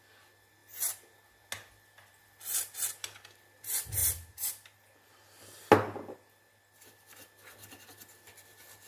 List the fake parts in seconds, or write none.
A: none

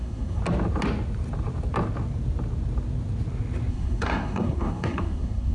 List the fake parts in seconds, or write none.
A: 0.0-0.4; 3.7-5.5

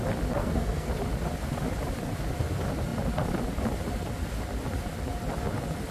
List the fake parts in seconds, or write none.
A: 0.4-0.9

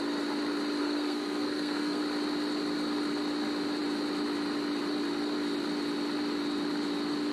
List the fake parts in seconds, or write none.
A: 0.8-2.0

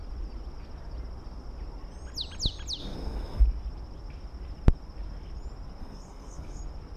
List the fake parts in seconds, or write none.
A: 2.8-3.4; 5.8-6.6

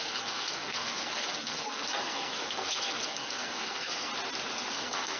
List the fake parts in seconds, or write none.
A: 0.0-4.1; 4.7-5.2

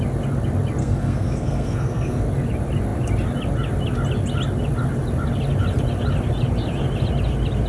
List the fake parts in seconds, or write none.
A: 0.8-2.2